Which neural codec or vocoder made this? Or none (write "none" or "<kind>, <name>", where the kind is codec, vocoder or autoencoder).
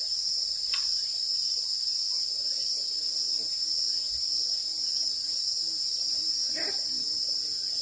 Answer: none